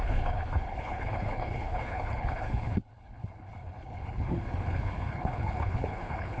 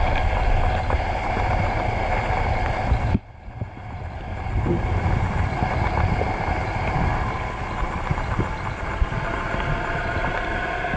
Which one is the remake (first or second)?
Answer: first